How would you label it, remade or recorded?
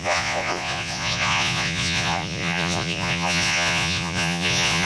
remade